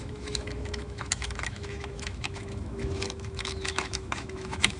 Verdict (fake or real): fake